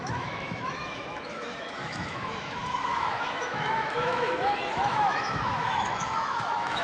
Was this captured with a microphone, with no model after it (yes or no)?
no